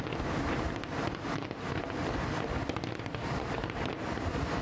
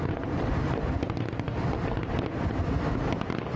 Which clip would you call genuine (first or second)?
second